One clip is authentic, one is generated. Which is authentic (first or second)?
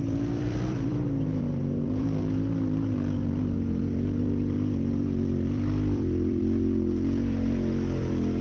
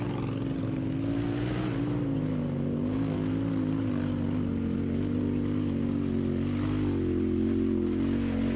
second